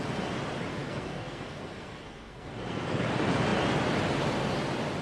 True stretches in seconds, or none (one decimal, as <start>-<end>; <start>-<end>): 0.0-0.7; 3.0-5.0